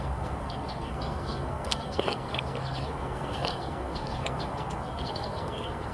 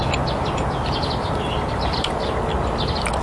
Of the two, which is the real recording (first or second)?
second